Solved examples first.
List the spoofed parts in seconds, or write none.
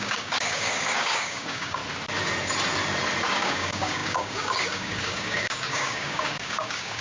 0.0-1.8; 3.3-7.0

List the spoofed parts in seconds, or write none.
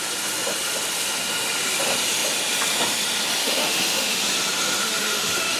3.4-4.2; 4.8-5.6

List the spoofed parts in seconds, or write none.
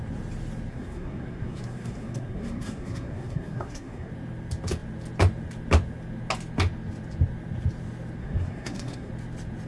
0.7-4.1; 8.2-9.1